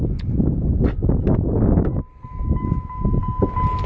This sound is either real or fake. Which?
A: real